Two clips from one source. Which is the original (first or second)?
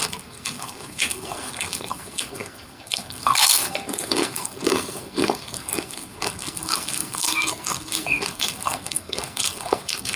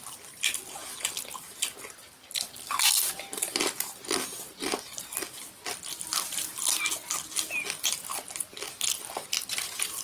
second